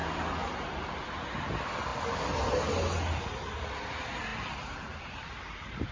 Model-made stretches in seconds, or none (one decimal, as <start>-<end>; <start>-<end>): 4.3-5.9